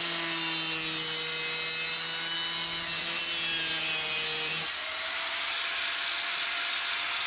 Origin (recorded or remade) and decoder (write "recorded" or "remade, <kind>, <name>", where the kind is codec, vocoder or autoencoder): recorded